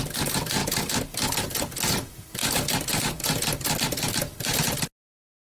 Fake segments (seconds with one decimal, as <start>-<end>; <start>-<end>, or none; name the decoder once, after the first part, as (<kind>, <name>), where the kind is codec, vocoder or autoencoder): 0.6-1.6 (vocoder, BigVGAN v2)